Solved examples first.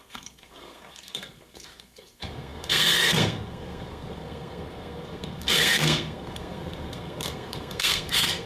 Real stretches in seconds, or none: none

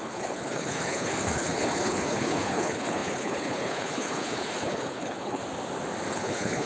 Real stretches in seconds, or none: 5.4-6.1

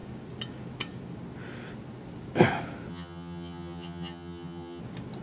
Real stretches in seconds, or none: 0.0-2.9; 4.8-5.2

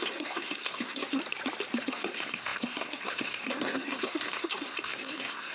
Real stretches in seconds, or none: 1.2-1.8

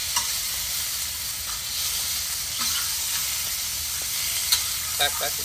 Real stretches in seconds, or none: 0.0-2.6; 3.2-4.7

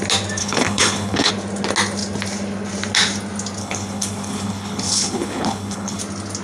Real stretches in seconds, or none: 0.0-0.4; 1.3-3.6; 6.0-6.4

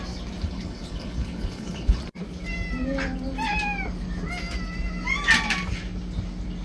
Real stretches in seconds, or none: 0.0-0.4; 2.0-6.6

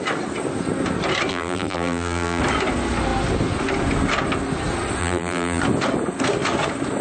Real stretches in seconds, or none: 0.0-1.3; 2.4-5.0; 5.6-7.0